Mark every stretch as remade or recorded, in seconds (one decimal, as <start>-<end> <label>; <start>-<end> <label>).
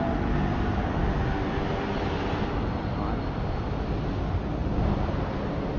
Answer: 0.0-4.6 recorded; 4.6-5.8 remade